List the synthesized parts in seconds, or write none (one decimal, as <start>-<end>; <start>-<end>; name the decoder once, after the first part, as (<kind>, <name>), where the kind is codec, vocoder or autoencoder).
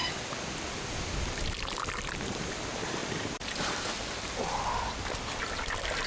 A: 3.0-4.6 (vocoder, BigVGAN v2)